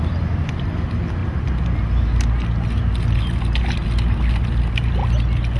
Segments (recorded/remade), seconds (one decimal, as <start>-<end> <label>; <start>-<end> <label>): 0.0-5.6 recorded